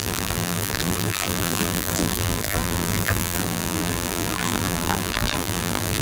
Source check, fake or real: fake